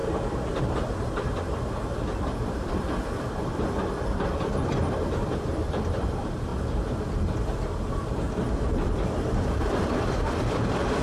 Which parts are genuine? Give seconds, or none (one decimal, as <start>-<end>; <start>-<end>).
0.0-0.5; 6.5-7.8